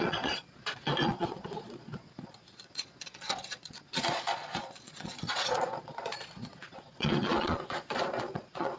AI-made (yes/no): yes